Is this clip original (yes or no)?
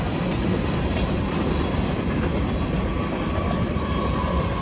yes